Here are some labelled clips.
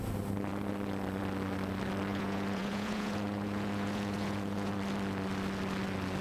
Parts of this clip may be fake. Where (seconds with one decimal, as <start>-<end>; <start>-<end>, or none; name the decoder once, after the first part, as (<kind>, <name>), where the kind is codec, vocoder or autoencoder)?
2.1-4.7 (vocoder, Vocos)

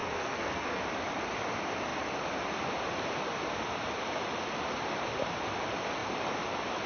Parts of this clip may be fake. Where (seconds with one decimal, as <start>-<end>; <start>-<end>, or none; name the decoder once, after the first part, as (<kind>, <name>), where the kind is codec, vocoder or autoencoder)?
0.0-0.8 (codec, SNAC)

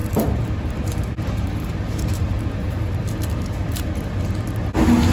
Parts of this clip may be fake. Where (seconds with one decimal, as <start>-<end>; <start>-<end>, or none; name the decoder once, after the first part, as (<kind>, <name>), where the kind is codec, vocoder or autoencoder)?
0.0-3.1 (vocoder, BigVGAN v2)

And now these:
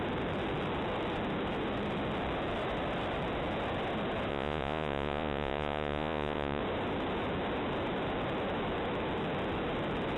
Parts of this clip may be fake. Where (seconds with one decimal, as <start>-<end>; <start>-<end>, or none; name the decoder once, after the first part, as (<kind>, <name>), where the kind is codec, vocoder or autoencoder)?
4.3-6.6 (vocoder, Vocos)

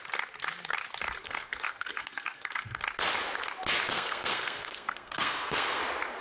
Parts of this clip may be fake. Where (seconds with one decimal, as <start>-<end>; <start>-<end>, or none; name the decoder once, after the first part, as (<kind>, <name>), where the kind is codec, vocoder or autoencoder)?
1.2-2.8 (codec, SNAC); 3.9-5.8

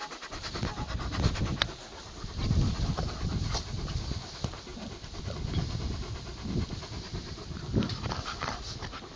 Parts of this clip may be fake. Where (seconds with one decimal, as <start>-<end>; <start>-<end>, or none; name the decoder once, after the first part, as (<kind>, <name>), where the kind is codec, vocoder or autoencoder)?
2.4-3.9 (vocoder, BigVGAN v2); 4.7-5.2

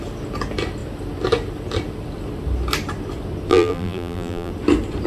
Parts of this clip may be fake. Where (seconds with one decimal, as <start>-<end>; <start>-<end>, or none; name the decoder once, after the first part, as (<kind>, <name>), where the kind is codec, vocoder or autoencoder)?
3.5-4.5 (vocoder, BigVGAN v2)